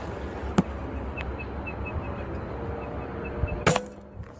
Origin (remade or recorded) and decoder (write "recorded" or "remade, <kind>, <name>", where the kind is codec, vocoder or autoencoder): recorded